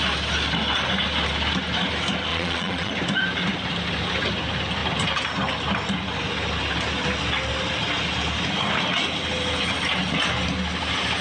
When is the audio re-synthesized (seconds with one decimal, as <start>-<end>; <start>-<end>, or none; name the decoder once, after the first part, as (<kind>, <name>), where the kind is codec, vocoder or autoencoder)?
2.3-2.9 (vocoder, Vocos)